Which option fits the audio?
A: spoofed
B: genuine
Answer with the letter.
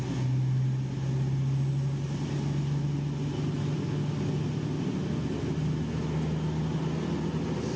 B